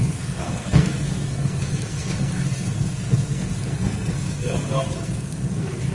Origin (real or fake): fake